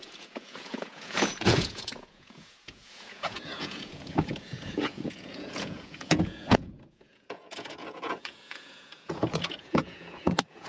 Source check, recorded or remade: remade